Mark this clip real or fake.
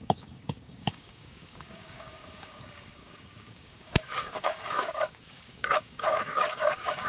fake